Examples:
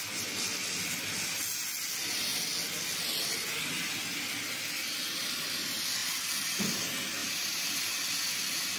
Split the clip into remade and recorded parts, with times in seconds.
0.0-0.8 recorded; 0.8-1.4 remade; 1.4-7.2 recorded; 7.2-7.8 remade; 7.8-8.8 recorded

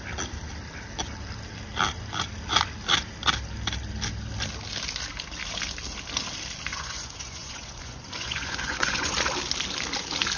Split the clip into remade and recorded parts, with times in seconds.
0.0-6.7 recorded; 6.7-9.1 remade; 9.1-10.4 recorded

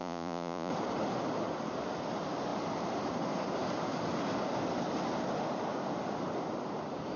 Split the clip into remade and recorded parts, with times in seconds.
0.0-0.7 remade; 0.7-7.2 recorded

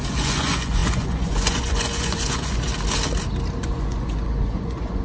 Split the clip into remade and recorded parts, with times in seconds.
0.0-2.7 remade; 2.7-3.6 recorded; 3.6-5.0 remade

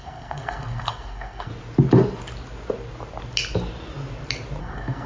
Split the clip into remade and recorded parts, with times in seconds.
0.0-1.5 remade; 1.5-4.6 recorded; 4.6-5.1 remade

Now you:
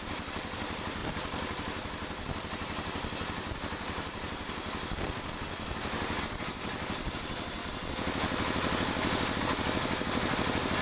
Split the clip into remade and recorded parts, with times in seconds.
0.0-7.6 remade; 7.6-9.4 recorded; 9.4-10.8 remade